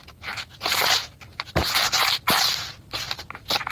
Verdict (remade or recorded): recorded